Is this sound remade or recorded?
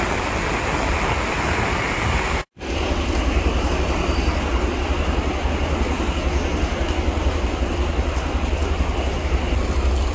recorded